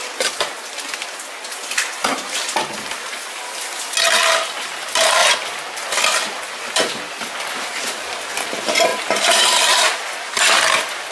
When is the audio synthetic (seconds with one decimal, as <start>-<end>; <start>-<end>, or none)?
4.6-5.2; 7.5-11.1